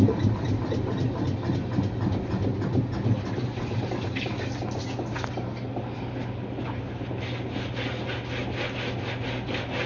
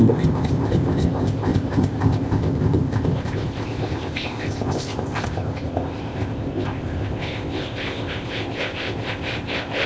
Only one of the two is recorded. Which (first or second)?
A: first